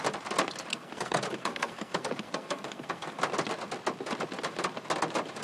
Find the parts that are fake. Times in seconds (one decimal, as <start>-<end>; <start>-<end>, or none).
0.7-3.2